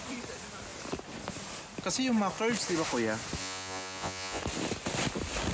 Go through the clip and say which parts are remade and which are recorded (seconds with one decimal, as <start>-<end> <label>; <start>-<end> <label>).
0.0-3.4 recorded; 3.4-4.4 remade; 4.4-5.5 recorded